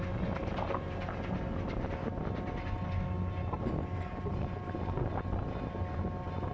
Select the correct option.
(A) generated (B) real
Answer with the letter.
B